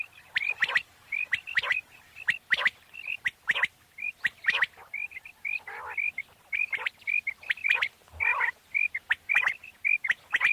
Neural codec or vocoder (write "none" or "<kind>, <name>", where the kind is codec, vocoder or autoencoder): none